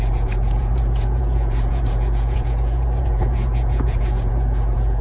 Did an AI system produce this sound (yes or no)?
yes